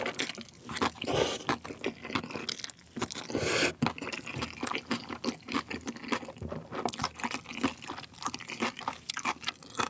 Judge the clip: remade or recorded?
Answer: recorded